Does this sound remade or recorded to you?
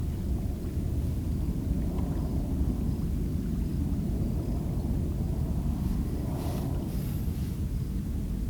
recorded